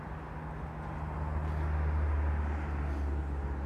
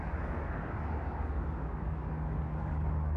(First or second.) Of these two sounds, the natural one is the first